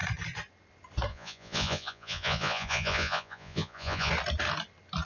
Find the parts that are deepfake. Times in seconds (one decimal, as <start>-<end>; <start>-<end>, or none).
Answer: 1.1-4.1